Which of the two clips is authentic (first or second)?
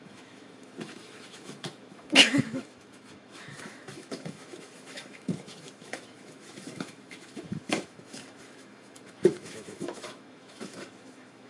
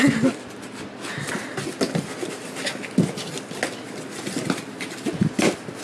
second